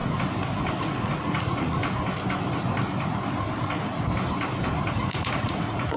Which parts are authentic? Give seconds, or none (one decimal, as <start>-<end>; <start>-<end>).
0.0-0.8; 1.8-4.9